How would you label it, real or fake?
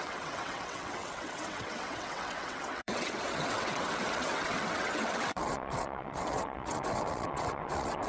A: fake